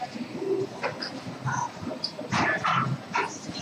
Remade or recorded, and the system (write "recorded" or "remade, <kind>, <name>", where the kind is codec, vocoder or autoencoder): recorded